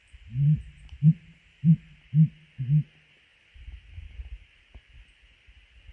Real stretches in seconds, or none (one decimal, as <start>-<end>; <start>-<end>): 2.1-3.3; 4.6-5.9